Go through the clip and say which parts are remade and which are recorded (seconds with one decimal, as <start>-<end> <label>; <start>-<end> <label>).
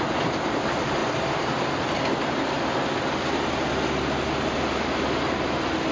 0.0-5.9 recorded